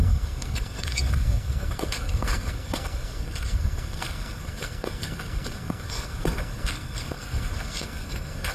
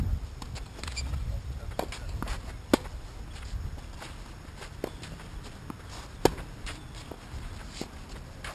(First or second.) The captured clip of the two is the second